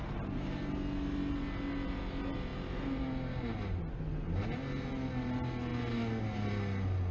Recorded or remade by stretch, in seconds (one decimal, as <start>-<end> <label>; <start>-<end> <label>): 0.0-7.1 recorded